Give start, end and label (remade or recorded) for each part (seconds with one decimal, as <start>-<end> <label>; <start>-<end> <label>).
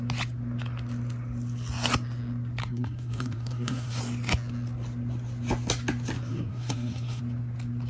0.0-2.6 recorded; 2.6-4.0 remade; 4.0-6.3 recorded; 6.3-7.2 remade; 7.2-7.9 recorded